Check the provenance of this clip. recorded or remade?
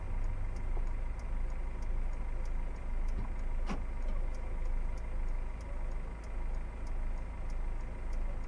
recorded